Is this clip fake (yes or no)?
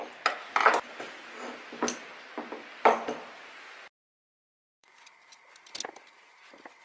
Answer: no